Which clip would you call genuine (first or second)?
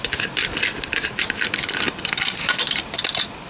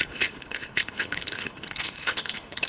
first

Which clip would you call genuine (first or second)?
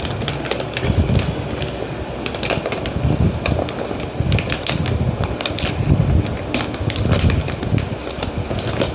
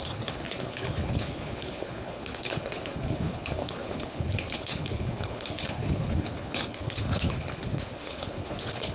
first